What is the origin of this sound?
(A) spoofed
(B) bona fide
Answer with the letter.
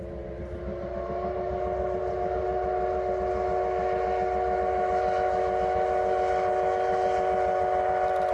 B